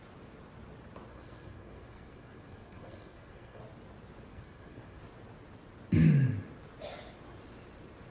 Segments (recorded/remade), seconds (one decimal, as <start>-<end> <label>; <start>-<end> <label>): 0.0-1.1 recorded; 1.1-3.6 remade; 3.6-4.3 recorded; 4.3-5.0 remade; 5.0-8.1 recorded